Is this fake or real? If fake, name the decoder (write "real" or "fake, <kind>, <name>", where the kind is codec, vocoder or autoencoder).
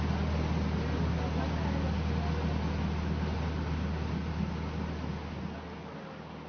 real